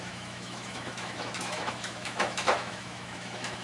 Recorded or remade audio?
remade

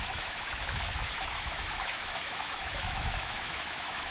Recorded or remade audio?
remade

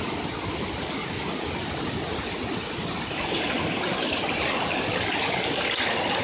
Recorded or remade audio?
recorded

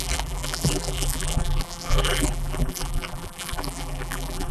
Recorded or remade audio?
remade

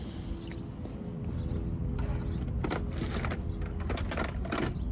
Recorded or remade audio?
recorded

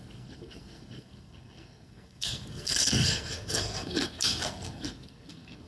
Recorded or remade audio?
remade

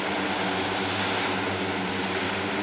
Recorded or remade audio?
recorded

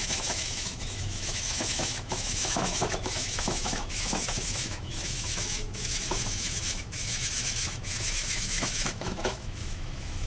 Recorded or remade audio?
remade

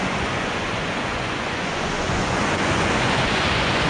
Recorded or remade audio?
remade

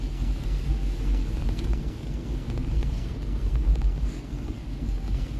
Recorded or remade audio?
remade